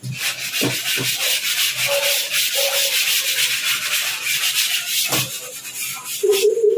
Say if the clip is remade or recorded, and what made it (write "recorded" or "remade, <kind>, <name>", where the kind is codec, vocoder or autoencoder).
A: recorded